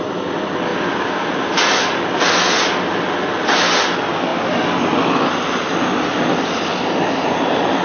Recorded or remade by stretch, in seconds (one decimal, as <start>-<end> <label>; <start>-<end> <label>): 0.0-7.8 recorded